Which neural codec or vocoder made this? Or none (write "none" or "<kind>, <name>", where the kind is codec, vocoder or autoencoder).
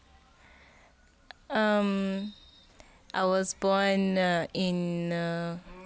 none